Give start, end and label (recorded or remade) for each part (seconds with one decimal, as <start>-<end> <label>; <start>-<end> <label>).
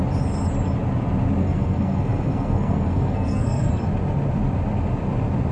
0.0-1.4 recorded; 1.4-3.7 remade; 3.7-5.5 recorded